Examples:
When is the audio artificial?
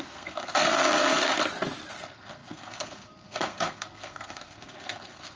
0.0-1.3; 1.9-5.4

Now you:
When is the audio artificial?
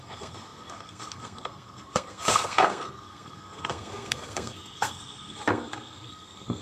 0.0-6.6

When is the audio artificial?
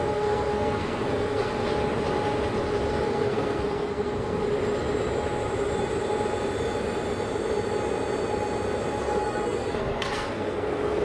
0.0-1.7; 2.9-4.4; 9.0-11.0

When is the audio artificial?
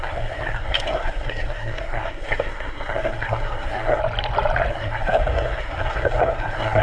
0.0-4.0; 4.7-6.8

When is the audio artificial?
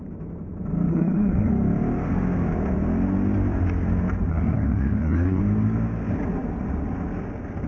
0.9-1.5; 4.3-5.4